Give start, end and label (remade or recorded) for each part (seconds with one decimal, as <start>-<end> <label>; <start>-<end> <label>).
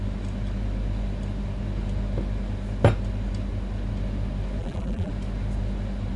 0.0-4.6 recorded; 4.6-5.1 remade; 5.1-6.2 recorded